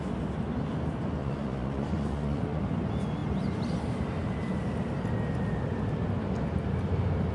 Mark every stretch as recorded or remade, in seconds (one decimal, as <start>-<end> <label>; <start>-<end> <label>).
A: 0.0-1.2 recorded; 1.2-2.6 remade; 2.6-7.3 recorded